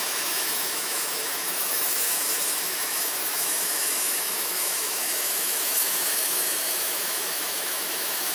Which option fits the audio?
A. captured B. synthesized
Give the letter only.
B